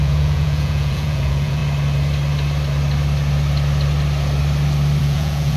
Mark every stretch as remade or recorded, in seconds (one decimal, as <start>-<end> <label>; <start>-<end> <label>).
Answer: 0.0-1.6 remade; 1.6-5.0 recorded; 5.0-5.6 remade